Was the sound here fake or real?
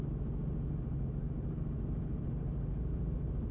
fake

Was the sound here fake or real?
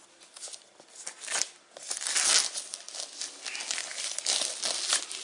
real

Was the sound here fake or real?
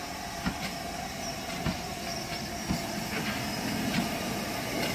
real